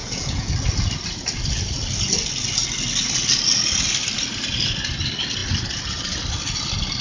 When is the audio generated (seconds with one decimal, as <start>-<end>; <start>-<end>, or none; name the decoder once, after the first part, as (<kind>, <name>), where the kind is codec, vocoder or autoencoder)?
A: 0.0-0.5 (vocoder, Vocos)